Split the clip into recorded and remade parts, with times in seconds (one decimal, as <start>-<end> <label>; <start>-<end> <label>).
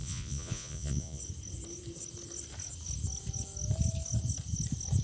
0.0-1.2 remade; 1.2-5.0 recorded